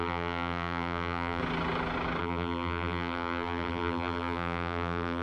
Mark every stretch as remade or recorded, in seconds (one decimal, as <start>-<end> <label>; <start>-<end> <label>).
0.0-1.4 remade; 1.4-2.2 recorded; 2.2-5.2 remade